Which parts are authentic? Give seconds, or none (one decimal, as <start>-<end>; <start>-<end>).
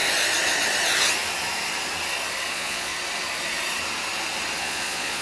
0.0-2.5; 2.9-4.6